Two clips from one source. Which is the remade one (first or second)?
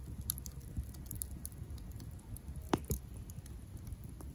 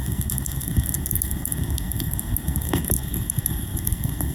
second